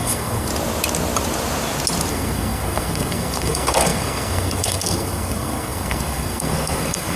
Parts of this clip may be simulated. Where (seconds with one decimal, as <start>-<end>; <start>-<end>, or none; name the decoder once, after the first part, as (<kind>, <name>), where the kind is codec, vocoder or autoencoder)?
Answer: 0.0-0.5 (codec, SNAC); 2.1-7.2